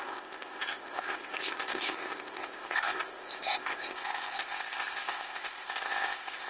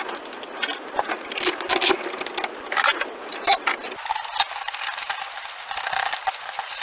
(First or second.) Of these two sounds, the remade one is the first